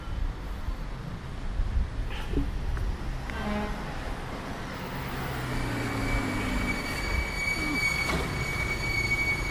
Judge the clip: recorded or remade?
recorded